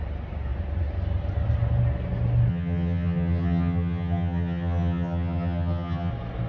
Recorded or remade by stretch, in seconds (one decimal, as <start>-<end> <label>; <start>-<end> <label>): 0.0-2.5 recorded; 2.5-6.1 remade; 6.1-6.5 recorded